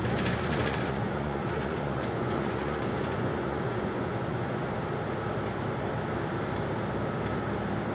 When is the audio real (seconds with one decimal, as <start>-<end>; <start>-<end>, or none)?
4.7-7.9